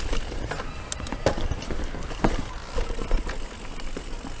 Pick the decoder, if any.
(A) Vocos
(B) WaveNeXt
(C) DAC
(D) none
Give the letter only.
D